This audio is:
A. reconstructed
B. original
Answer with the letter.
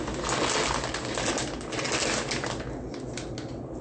B